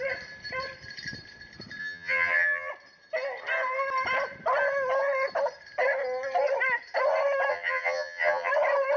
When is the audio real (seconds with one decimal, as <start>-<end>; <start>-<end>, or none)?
0.0-1.8; 2.7-7.5; 8.5-9.0